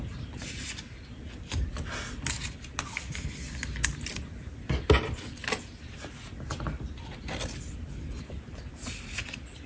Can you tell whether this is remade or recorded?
recorded